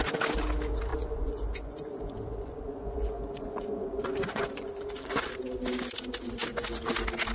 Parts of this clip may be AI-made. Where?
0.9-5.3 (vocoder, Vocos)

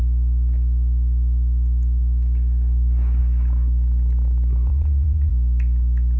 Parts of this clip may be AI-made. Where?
4.7-5.3 (vocoder, Vocos)

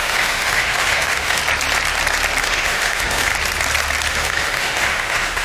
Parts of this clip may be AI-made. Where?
0.0-1.4 (autoencoder, DAC-VAE); 2.4-3.3; 4.1-5.4

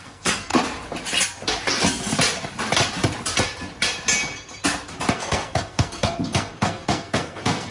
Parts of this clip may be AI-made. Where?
0.0-0.5 (codec, SNAC); 5.1-7.7

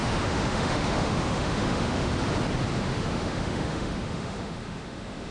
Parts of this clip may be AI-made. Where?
0.0-2.1 (autoencoder, DAC-VAE); 2.7-5.3

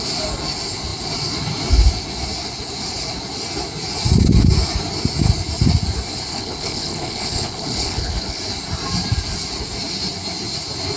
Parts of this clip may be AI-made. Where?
6.3-8.4 (codec, HILCodec)

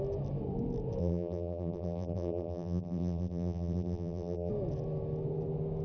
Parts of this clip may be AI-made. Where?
1.0-4.5 (vocoder, BigVGAN v2)